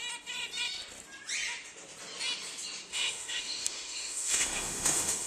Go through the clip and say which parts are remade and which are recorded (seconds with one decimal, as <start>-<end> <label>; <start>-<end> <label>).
0.0-2.9 recorded; 2.9-5.3 remade